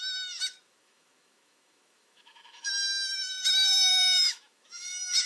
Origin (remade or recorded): remade